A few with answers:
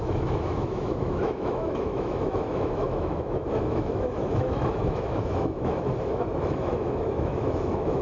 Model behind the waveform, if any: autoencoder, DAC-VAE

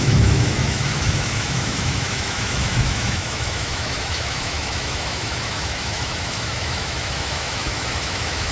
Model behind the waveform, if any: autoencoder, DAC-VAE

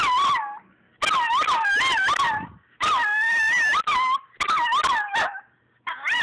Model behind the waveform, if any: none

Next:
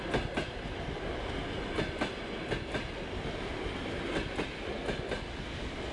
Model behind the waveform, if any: none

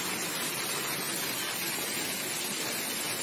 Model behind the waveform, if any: none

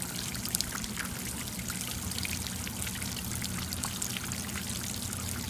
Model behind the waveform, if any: none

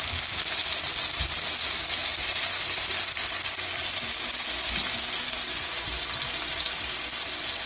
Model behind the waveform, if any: none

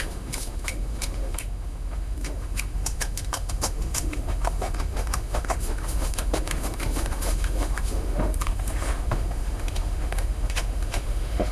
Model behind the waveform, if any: autoencoder, DAC-VAE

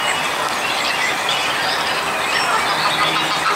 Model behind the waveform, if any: none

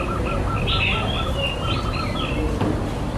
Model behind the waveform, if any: none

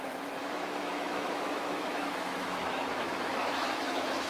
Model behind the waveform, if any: autoencoder, DAC-VAE